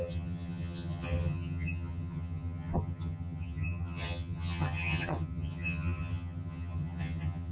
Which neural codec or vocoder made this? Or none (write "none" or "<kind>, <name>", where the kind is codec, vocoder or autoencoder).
vocoder, HiFi-GAN